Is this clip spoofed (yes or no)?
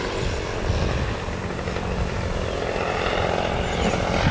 no